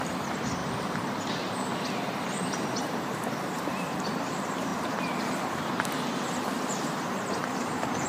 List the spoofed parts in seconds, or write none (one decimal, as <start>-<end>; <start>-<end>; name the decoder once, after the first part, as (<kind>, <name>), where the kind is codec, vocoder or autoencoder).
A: 0.0-4.7 (vocoder, BigVGAN v2); 5.4-8.1